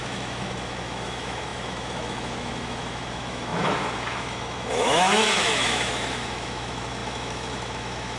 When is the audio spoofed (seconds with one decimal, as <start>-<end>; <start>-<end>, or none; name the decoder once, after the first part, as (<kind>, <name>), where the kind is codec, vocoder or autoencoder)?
0.0-8.2 (autoencoder, DAC-VAE)